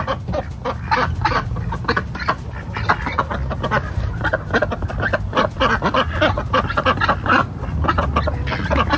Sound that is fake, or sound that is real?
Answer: real